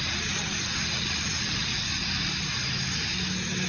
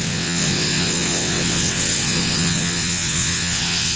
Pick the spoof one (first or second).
second